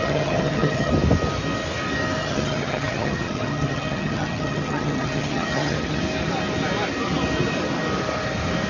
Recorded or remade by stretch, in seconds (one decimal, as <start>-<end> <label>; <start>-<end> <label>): 0.0-0.9 remade; 0.9-2.2 recorded; 2.2-6.0 remade; 6.0-8.7 recorded